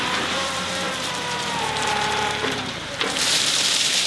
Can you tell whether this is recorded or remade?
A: remade